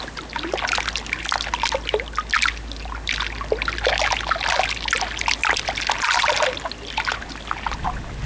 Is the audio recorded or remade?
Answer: recorded